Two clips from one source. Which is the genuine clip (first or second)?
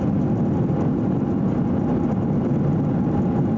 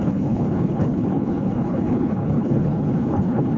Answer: first